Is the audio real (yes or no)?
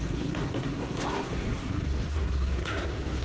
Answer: no